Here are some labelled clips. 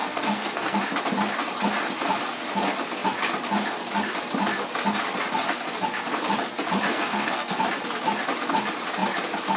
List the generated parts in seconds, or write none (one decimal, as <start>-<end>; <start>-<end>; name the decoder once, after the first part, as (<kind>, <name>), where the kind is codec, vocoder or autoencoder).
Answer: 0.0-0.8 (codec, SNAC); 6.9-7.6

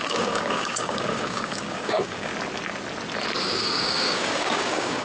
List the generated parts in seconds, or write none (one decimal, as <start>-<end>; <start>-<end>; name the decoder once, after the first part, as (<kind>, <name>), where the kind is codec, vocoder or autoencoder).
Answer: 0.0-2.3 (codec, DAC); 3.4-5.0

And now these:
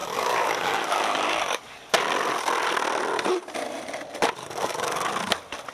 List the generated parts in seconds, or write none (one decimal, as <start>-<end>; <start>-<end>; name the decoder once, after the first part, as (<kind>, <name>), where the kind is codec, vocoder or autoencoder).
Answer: 0.0-1.6 (codec, DAC); 4.4-5.1

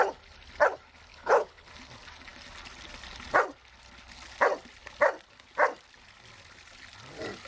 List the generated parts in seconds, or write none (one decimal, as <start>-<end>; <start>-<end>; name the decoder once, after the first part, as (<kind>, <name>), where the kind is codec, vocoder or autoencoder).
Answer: 1.1-1.7 (codec, HILCodec)

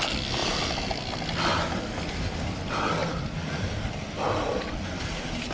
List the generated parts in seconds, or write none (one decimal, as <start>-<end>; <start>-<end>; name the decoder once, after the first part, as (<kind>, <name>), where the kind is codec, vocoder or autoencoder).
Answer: none